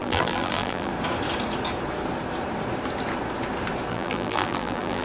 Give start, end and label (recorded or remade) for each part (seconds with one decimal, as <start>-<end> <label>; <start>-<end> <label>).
0.0-0.9 remade; 0.9-3.9 recorded; 3.9-5.0 remade